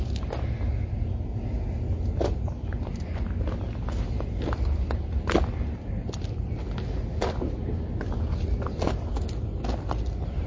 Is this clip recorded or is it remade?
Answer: recorded